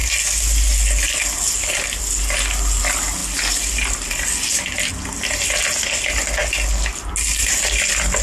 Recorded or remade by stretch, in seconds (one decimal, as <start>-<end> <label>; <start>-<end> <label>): 0.0-8.2 recorded